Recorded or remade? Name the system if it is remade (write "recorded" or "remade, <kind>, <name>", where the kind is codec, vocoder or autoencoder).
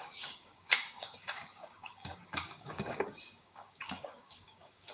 remade, codec, DAC